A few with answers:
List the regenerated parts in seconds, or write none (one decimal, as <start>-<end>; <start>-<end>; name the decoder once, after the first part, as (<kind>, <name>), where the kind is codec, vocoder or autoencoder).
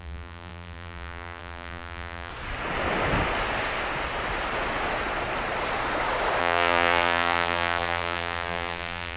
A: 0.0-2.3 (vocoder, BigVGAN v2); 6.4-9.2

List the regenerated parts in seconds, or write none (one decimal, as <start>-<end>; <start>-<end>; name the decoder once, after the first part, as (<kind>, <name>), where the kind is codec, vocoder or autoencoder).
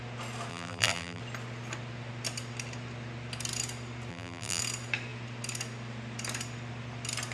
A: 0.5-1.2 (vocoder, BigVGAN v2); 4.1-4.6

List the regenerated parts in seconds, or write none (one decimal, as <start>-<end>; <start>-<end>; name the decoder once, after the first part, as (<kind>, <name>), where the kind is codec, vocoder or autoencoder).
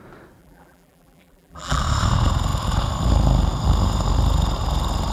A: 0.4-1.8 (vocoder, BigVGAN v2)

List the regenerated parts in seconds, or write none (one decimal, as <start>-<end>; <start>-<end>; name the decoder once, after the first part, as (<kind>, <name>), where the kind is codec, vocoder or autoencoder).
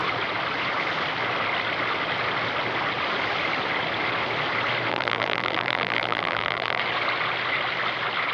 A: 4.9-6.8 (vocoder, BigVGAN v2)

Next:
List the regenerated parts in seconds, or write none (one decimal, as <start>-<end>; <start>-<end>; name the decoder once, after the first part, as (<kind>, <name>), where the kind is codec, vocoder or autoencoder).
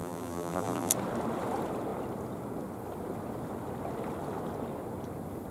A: 0.0-0.9 (vocoder, BigVGAN v2)